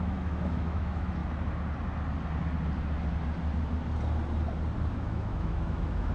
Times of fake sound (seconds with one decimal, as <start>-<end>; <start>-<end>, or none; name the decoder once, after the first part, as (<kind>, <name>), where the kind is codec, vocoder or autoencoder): 0.0-1.2 (autoencoder, DAC-VAE); 4.9-6.1